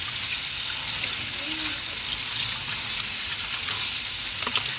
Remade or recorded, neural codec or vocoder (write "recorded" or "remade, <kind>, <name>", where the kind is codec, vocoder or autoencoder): recorded